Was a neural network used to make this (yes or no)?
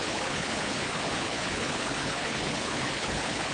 yes